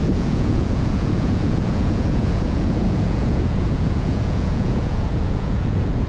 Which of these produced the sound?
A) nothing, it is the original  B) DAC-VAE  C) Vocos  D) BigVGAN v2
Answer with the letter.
C